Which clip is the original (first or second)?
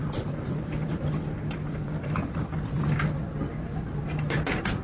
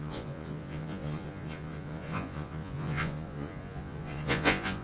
first